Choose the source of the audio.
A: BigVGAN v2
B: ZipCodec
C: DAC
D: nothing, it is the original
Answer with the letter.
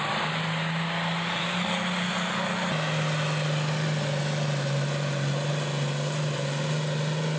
D